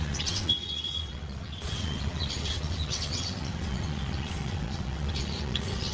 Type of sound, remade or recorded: remade